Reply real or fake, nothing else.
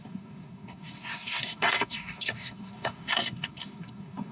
fake